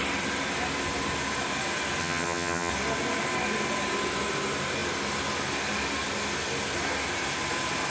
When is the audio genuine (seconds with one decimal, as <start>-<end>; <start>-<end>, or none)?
0.0-2.0; 2.7-7.9